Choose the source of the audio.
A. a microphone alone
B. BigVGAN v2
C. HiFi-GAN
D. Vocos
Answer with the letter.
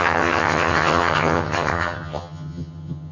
C